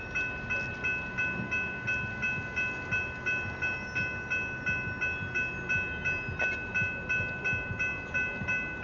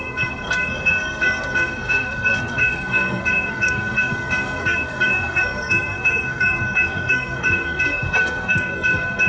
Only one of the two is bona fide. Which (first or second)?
first